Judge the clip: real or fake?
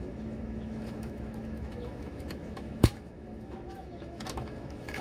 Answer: fake